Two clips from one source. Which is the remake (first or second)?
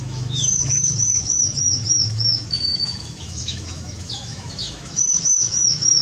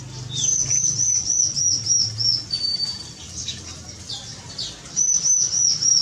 first